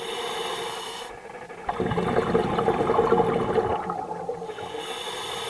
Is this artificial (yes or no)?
no